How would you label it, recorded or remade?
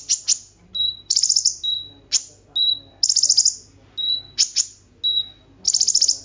recorded